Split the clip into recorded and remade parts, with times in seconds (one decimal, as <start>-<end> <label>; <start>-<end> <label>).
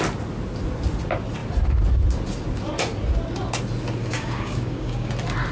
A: 0.0-4.0 recorded; 4.0-5.1 remade; 5.1-5.5 recorded